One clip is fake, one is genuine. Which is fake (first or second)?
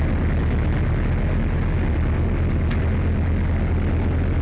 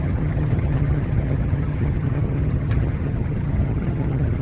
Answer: second